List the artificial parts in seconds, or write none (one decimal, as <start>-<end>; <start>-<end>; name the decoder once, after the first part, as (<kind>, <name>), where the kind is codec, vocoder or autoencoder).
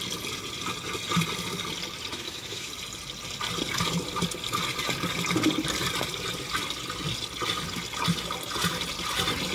2.1-2.7 (autoencoder, DAC-VAE)